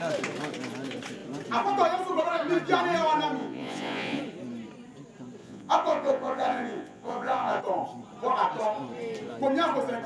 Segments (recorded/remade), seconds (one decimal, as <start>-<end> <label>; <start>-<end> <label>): 0.0-3.4 recorded; 3.4-4.2 remade; 4.2-5.4 recorded; 5.4-7.6 remade; 7.6-10.1 recorded